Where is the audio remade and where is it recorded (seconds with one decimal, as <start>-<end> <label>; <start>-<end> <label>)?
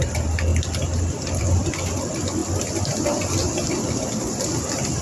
0.0-0.5 remade; 0.5-1.1 recorded; 1.1-2.4 remade; 2.4-3.7 recorded; 3.7-5.0 remade